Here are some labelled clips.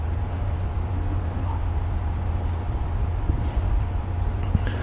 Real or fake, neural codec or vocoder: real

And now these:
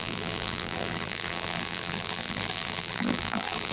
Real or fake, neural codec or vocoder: fake, vocoder, BigVGAN v2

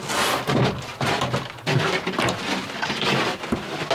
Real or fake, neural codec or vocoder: real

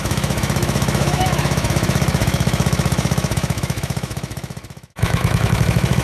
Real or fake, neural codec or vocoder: fake, autoencoder, DAC-VAE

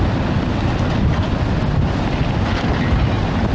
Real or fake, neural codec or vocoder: real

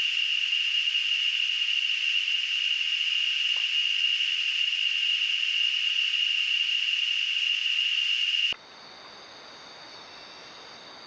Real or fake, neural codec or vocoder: real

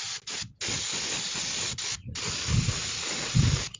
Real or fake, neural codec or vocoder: real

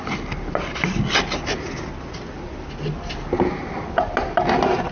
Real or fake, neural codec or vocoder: real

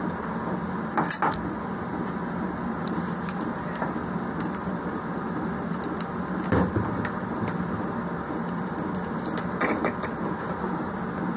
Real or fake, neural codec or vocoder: real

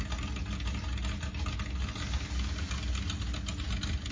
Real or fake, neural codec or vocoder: real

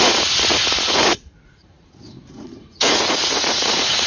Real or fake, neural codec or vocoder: fake, vocoder, Vocos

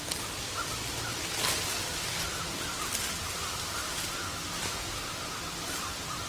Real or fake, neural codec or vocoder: real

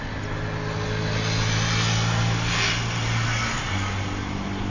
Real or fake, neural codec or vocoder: real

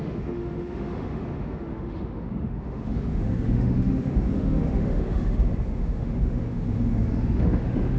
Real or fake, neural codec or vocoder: fake, autoencoder, DAC-VAE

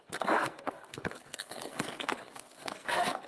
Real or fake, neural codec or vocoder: fake, codec, SNAC